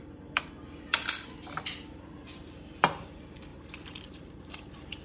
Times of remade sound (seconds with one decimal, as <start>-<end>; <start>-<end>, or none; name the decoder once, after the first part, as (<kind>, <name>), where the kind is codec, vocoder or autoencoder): 3.5-4.6 (vocoder, BigVGAN v2)